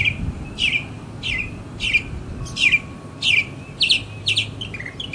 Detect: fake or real real